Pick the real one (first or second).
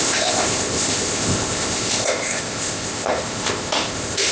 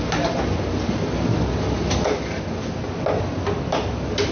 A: second